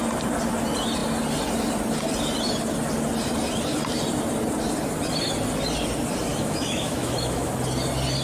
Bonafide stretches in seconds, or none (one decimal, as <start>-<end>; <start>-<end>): 0.0-6.3; 7.5-8.2